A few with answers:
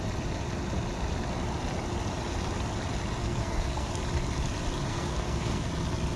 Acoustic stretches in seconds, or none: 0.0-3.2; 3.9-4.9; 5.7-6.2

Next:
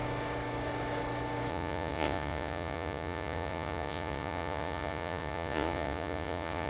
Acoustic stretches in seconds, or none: 0.0-1.5

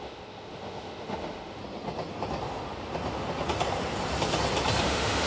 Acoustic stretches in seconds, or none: 1.6-4.8

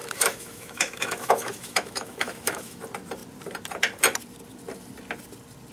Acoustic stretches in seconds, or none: 2.8-5.7

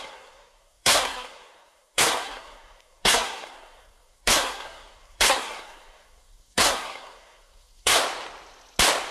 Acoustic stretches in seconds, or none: 8.0-9.1

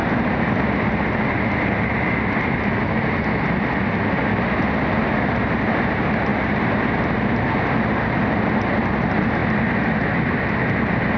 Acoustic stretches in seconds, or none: 0.0-11.2

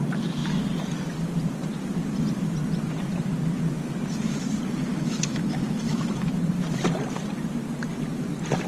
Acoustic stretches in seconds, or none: 0.0-4.9; 6.3-8.7

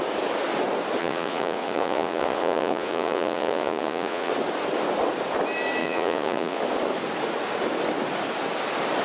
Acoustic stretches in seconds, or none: 0.0-1.0; 4.3-5.8; 6.6-9.0